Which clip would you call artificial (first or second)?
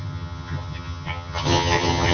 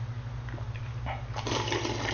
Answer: first